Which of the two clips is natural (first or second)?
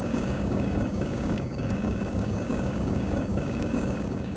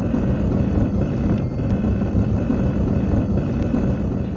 second